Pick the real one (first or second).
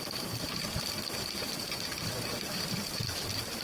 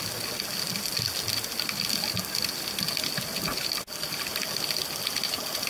second